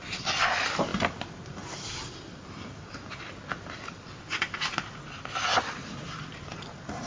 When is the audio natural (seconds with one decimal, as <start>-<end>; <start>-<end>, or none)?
0.0-7.1